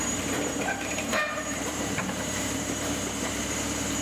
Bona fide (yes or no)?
no